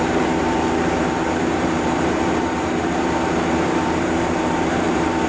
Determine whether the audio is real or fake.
fake